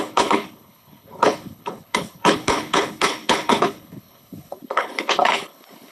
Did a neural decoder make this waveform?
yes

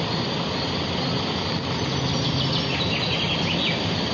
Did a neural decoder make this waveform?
no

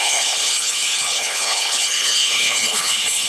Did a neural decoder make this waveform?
yes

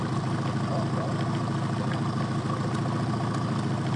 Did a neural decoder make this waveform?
no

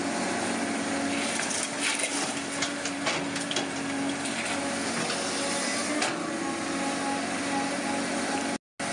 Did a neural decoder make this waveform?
no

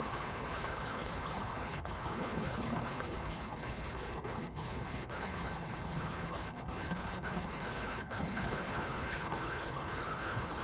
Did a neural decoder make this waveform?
yes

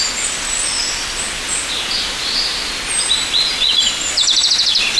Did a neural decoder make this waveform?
no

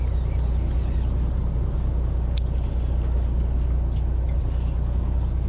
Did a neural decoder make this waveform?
no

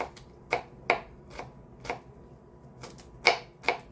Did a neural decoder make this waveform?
no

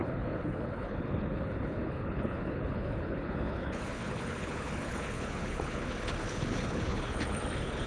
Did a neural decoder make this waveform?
yes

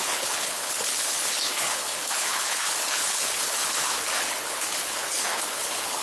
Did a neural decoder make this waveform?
yes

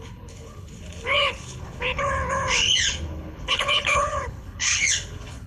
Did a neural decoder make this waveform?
yes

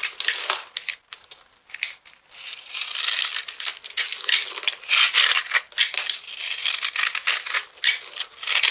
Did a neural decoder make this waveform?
no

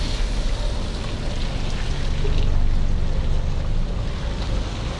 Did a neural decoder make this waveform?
no